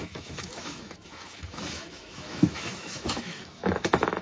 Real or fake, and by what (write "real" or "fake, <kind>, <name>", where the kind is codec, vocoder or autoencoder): fake, autoencoder, DAC-VAE